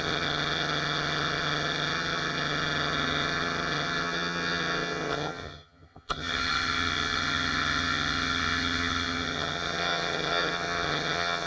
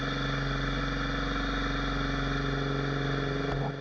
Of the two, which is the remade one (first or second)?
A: first